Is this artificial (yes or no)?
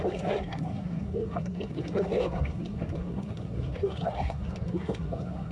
yes